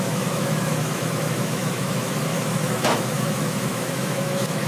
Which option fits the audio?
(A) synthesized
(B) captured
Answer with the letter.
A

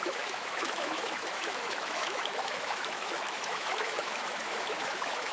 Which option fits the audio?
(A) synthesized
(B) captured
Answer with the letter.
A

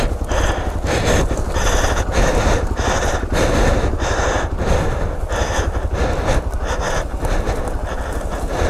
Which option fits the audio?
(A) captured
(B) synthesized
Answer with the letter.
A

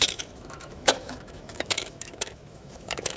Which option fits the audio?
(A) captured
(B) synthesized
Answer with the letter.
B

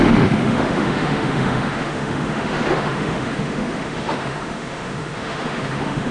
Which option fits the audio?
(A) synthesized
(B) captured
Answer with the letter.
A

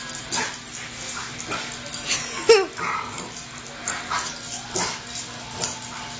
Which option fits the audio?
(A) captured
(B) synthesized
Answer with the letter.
A